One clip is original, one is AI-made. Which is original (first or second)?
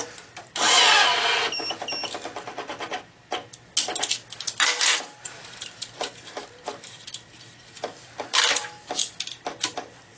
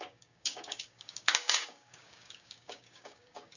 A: first